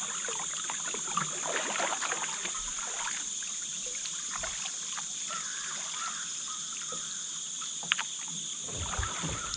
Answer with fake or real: real